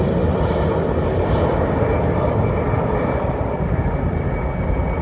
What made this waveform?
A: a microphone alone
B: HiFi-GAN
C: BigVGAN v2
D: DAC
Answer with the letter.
A